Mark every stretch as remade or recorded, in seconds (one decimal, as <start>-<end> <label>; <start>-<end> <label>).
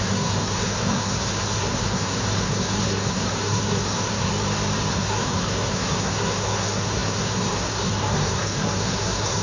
0.0-4.3 remade; 4.3-4.9 recorded; 4.9-9.4 remade